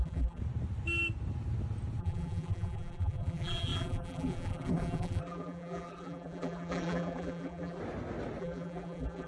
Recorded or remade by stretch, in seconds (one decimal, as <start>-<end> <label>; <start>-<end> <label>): 0.0-0.4 remade; 0.4-2.0 recorded; 2.0-7.8 remade; 7.8-8.4 recorded; 8.4-9.3 remade

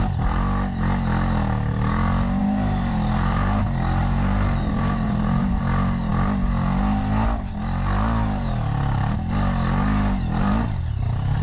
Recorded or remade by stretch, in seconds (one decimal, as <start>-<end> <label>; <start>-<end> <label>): 0.0-2.4 recorded; 2.4-3.6 remade; 3.6-4.0 recorded; 4.0-5.6 remade; 5.6-11.4 recorded

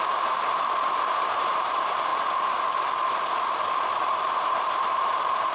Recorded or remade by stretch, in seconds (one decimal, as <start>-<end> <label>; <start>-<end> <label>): 0.0-2.1 remade; 2.1-3.7 recorded; 3.7-5.5 remade

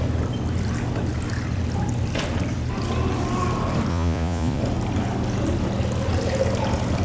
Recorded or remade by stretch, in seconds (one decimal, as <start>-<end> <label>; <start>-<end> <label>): 0.0-3.9 recorded; 3.9-4.6 remade; 4.6-7.0 recorded

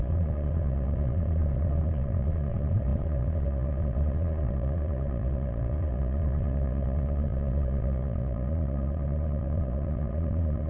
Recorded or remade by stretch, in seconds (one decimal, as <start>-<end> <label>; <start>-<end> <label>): 0.0-10.7 remade

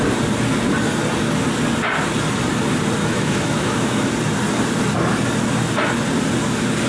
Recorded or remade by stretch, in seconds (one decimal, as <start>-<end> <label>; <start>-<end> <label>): 0.0-3.0 recorded; 3.0-4.1 remade; 4.1-6.9 recorded